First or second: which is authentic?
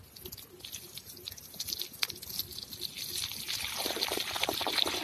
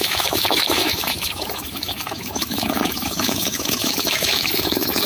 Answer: first